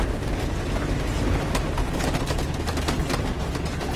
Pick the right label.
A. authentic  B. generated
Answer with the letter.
A